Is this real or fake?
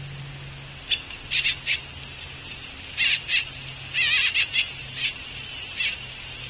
real